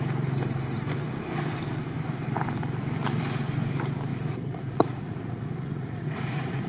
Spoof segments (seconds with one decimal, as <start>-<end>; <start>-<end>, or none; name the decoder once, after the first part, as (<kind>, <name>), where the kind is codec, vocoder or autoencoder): 4.1-6.7 (vocoder, Vocos)